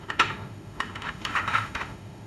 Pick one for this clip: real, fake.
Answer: fake